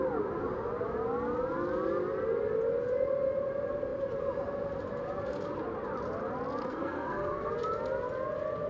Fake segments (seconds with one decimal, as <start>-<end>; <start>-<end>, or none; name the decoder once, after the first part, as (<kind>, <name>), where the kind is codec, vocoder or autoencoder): 6.6-7.5 (codec, SNAC)

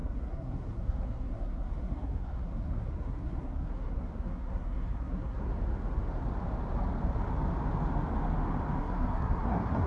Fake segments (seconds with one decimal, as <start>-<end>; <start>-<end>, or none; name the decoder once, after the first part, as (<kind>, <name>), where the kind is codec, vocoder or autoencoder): 0.0-5.5 (codec, SNAC); 8.8-9.9

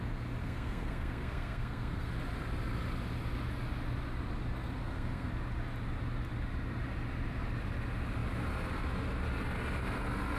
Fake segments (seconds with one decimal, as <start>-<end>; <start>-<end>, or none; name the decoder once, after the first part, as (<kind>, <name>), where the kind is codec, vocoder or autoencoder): 0.4-2.1 (codec, SNAC); 4.8-5.3